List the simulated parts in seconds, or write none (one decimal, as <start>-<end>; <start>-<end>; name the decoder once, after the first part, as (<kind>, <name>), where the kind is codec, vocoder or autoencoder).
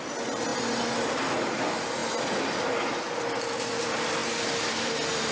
0.0-0.5 (vocoder, BigVGAN v2); 1.4-2.0; 3.8-4.2; 4.7-5.3